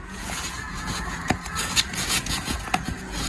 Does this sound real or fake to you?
fake